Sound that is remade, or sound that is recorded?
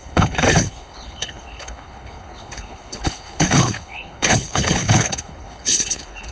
remade